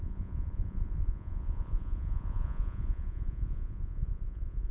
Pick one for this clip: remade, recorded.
remade